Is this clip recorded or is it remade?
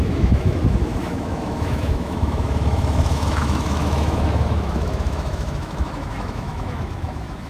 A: remade